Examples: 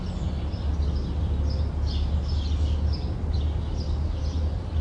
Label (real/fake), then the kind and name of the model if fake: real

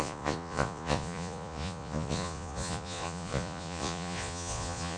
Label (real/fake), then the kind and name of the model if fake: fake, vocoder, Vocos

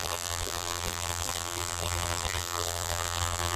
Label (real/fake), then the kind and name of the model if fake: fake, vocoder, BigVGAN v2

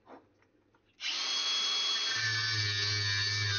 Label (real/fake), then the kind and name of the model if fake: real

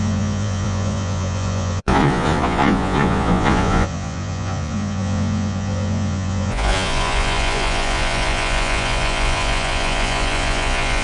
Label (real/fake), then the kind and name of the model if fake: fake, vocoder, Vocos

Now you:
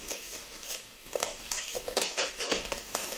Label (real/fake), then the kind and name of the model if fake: fake, codec, DAC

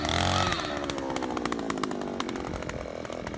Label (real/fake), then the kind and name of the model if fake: real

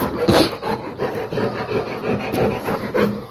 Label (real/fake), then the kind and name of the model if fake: real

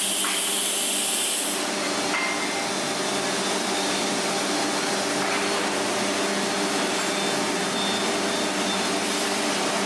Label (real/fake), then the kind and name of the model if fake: real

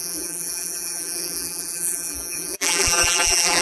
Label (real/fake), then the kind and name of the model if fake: fake, vocoder, BigVGAN v2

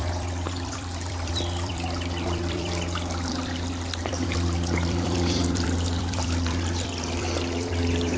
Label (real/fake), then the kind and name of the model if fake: fake, vocoder, BigVGAN v2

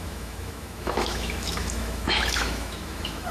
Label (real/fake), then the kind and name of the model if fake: fake, autoencoder, DAC-VAE